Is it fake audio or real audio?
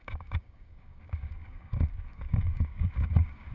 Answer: fake